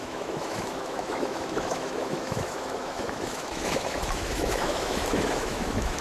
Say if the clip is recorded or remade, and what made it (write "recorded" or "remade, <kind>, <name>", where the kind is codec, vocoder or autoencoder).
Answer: remade, autoencoder, DAC-VAE